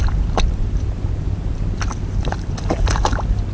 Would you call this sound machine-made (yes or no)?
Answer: no